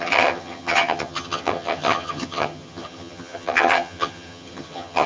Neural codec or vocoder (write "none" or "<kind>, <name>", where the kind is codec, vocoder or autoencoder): vocoder, HiFi-GAN